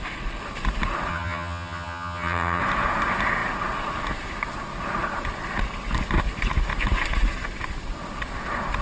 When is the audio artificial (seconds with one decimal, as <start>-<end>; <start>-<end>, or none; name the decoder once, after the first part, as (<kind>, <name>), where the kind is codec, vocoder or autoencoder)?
1.1-2.6 (vocoder, HiFi-GAN)